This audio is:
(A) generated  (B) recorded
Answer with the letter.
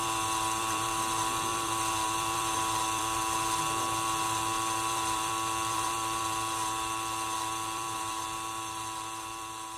A